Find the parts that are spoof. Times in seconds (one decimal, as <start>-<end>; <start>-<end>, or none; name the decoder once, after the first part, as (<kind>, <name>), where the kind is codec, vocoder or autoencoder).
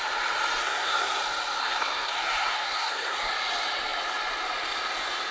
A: 0.6-1.2 (codec, SNAC); 1.6-3.3